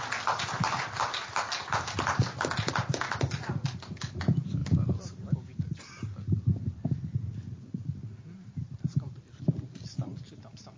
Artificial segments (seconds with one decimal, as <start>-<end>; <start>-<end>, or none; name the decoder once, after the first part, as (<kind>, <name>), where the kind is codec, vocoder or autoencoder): none